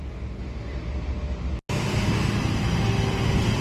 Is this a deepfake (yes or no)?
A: no